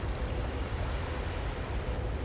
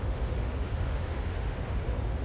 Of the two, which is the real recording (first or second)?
first